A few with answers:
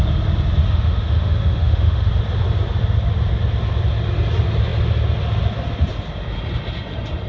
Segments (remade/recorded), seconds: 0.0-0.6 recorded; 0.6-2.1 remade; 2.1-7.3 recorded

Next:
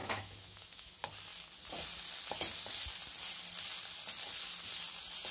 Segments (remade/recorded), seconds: 0.0-0.9 remade; 0.9-5.3 recorded

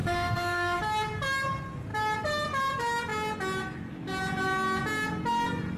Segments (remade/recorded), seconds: 0.0-0.8 remade; 0.8-5.8 recorded

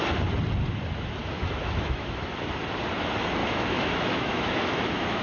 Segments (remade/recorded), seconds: 0.0-1.2 recorded; 1.2-2.2 remade; 2.2-3.4 recorded; 3.4-5.2 remade

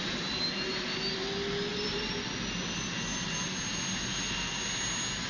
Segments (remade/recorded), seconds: 0.0-5.3 recorded

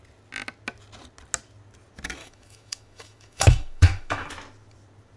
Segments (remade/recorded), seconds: 0.0-2.2 recorded; 2.2-4.3 remade; 4.3-5.2 recorded

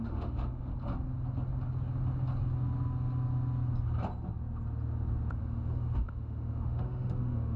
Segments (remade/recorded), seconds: 0.0-0.7 remade; 0.7-5.3 recorded; 5.3-7.6 remade

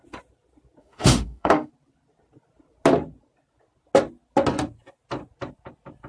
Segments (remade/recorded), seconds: 0.0-0.8 recorded; 0.8-1.7 remade; 1.7-6.1 recorded